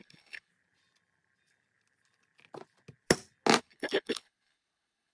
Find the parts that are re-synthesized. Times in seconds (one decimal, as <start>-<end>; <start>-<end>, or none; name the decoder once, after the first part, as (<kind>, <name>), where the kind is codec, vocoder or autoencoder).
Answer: 0.0-0.5 (codec, HILCodec); 3.6-5.1